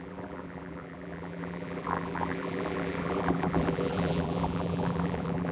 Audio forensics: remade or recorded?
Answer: remade